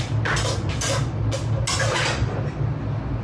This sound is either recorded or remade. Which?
recorded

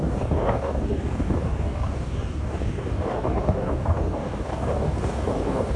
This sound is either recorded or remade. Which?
remade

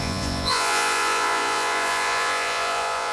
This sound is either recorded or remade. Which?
remade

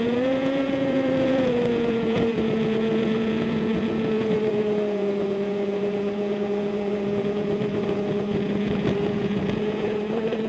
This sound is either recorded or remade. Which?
remade